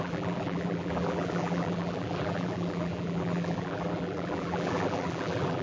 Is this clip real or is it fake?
fake